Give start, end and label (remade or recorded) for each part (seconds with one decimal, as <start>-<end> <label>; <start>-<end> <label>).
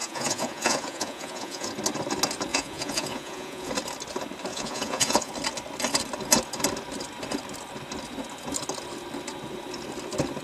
0.0-1.7 remade; 1.7-2.5 recorded; 2.5-3.7 remade; 3.7-4.5 recorded; 4.5-5.3 remade; 5.3-10.4 recorded